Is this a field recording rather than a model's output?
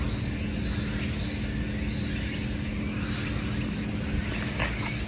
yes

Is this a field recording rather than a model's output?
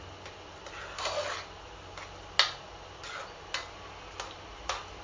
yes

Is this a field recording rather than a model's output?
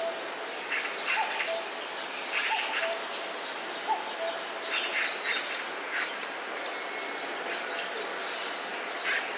yes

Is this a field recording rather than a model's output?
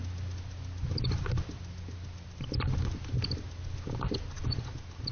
yes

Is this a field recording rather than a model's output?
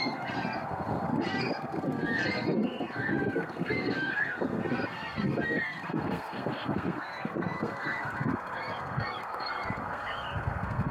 no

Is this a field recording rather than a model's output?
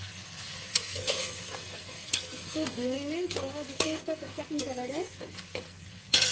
no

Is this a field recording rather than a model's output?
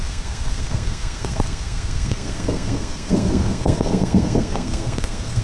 no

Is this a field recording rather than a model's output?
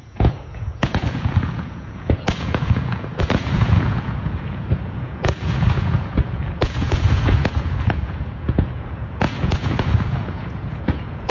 no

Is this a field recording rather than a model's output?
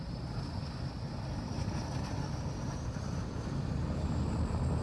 yes